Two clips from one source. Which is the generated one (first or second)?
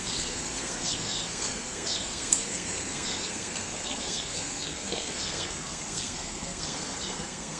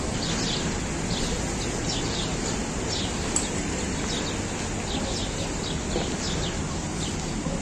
first